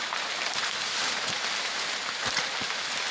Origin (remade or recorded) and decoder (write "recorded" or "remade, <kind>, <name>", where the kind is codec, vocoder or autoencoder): recorded